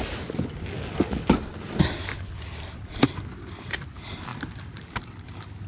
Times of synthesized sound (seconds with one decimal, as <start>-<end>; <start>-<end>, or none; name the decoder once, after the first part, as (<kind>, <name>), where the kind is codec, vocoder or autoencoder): none